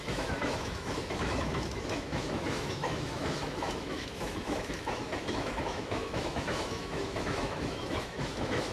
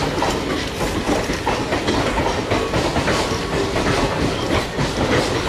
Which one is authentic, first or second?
second